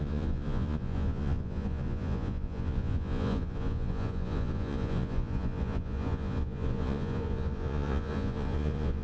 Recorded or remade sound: remade